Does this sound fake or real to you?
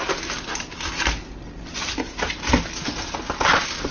real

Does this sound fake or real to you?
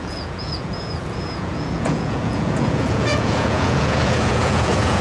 fake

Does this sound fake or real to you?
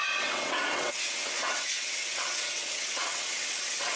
fake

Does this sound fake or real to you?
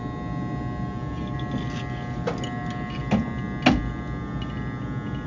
real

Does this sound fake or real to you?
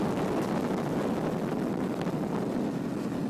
real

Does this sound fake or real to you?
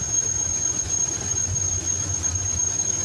fake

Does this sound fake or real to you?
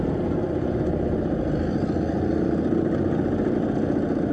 real